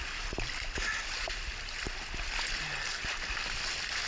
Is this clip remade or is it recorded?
recorded